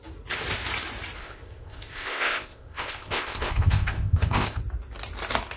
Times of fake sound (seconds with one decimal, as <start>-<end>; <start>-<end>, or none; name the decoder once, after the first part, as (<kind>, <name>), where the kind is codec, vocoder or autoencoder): 1.2-4.6 (codec, ZipCodec)